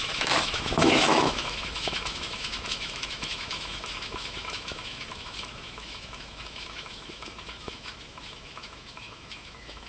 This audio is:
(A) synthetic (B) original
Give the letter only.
A